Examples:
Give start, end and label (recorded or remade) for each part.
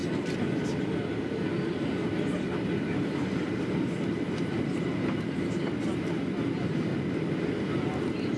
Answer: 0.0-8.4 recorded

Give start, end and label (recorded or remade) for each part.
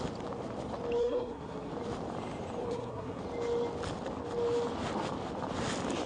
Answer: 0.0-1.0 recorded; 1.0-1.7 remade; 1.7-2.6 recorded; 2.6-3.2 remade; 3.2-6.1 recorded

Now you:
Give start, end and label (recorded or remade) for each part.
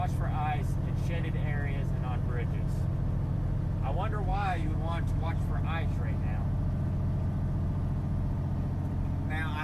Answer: 0.0-4.3 recorded; 4.3-5.3 remade; 5.3-9.6 recorded